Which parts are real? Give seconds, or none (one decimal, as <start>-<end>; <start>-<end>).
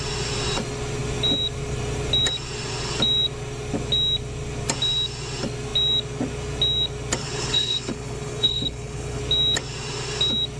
0.0-7.2; 9.2-10.6